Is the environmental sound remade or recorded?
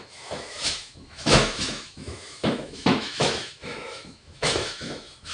remade